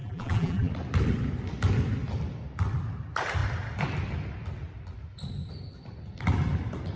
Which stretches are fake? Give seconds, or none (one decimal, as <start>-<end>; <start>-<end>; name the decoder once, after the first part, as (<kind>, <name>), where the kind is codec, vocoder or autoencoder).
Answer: 0.0-0.7 (vocoder, BigVGAN v2)